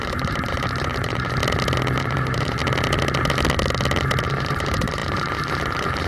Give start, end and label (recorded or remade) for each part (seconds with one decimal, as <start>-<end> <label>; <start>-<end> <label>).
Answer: 0.0-1.4 remade; 1.4-2.0 recorded; 2.0-2.6 remade; 2.6-4.2 recorded; 4.2-6.1 remade